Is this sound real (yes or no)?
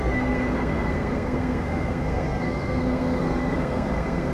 no